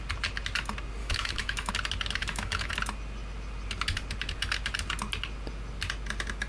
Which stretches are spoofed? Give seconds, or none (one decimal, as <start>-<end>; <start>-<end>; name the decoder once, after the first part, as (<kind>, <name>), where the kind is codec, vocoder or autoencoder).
1.0-1.7 (autoencoder, DAC-VAE); 2.2-2.7